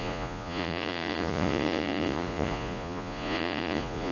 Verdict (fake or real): fake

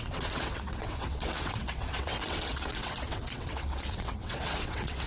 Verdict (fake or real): fake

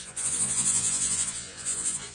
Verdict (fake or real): fake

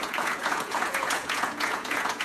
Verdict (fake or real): fake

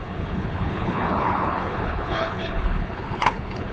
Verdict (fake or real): fake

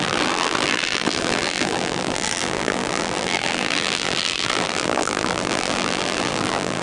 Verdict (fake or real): fake